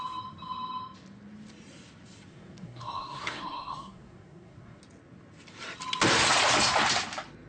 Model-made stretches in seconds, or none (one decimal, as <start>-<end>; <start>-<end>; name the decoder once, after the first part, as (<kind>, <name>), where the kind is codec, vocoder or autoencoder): 2.3-4.8 (codec, SNAC)